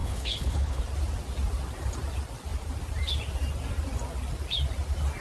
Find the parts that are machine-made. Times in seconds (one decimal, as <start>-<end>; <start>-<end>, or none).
0.0-0.8